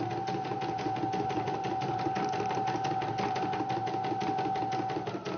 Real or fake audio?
real